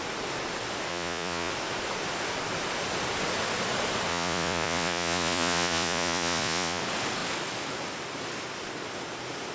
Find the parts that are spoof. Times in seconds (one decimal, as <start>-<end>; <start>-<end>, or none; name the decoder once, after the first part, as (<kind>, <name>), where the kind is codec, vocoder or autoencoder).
0.9-1.5 (vocoder, Vocos); 4.1-6.8